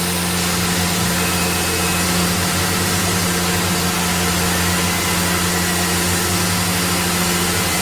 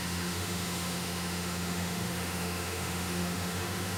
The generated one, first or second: second